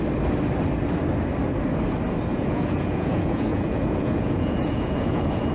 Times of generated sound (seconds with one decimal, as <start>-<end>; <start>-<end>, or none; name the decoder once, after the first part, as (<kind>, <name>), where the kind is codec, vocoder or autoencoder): 2.3-5.5 (vocoder, Vocos)